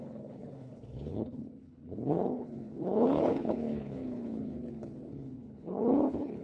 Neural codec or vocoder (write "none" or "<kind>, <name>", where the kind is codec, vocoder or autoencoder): codec, HILCodec